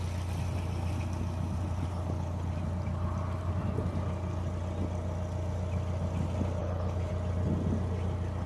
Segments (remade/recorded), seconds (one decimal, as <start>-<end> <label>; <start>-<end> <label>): 0.0-1.9 recorded; 1.9-2.5 remade; 2.5-6.6 recorded; 6.6-7.1 remade; 7.1-8.5 recorded